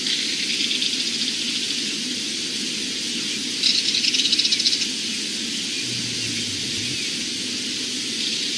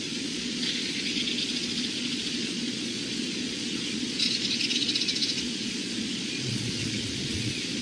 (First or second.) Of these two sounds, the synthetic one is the second